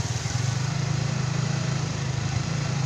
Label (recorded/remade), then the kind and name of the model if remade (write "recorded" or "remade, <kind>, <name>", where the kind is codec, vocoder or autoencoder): remade, vocoder, BigVGAN v2